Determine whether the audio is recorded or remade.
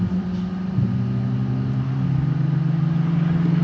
recorded